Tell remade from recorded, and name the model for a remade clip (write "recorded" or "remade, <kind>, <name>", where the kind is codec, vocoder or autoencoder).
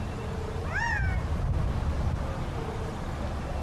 recorded